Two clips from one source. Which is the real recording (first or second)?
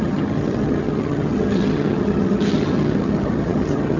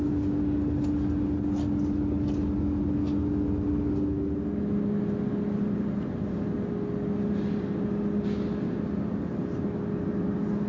second